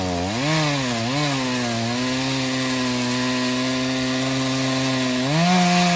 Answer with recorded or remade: recorded